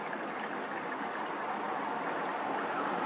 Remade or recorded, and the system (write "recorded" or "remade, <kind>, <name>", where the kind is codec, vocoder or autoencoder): recorded